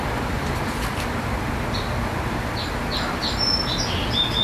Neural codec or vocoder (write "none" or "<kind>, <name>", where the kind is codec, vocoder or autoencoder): none